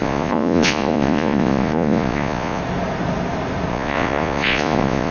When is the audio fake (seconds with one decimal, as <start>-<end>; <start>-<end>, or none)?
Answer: 0.0-2.6; 3.7-5.1